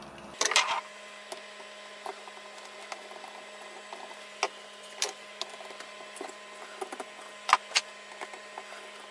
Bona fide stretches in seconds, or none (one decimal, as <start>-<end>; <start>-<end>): 0.0-9.1